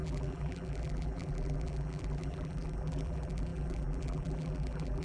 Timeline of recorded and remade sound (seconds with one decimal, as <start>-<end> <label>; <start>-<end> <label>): 0.0-5.0 remade